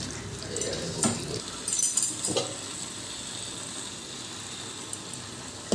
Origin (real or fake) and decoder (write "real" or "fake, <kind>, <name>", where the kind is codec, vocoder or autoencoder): real